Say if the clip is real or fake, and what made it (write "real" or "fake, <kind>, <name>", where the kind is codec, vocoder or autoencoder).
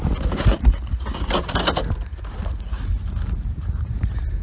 real